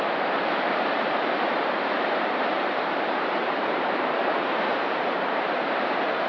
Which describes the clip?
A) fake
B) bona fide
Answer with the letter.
A